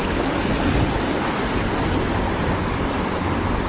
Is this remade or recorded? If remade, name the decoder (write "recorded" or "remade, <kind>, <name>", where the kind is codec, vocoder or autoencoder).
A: recorded